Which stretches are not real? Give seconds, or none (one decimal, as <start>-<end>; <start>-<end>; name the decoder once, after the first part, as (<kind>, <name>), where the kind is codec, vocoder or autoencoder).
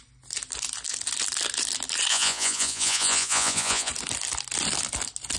2.1-3.9 (vocoder, Vocos)